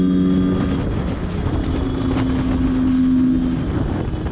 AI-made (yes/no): no